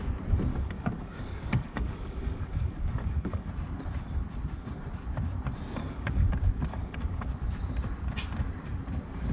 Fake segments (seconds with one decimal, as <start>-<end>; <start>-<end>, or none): 0.5-3.5; 5.8-6.3; 6.7-7.3